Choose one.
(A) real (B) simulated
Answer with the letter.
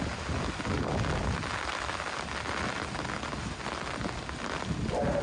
A